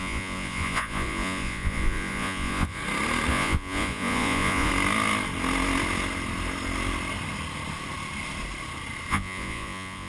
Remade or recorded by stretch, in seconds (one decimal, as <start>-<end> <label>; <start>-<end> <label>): 0.0-2.8 remade; 2.8-3.3 recorded; 3.3-4.7 remade; 4.7-9.1 recorded; 9.1-10.1 remade